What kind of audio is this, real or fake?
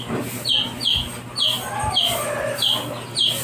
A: real